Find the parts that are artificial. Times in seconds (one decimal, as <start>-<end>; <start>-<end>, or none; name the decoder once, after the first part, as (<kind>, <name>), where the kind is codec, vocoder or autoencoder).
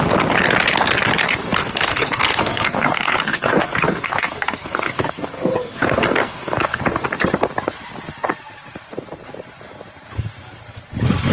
1.6-6.8 (codec, SNAC)